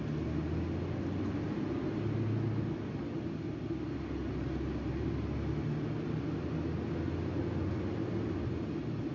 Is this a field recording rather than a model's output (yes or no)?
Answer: yes